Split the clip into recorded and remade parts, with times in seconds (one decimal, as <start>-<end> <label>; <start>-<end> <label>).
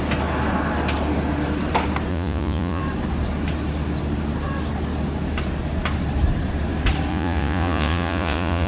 0.0-2.1 recorded; 2.1-2.8 remade; 2.8-7.1 recorded; 7.1-8.7 remade